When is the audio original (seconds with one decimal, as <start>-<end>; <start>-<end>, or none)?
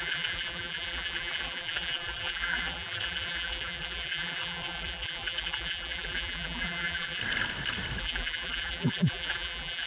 7.2-8.0